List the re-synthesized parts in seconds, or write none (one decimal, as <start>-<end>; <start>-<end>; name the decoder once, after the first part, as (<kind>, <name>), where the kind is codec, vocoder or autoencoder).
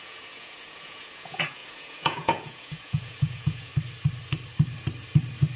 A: 0.0-3.7 (vocoder, Vocos)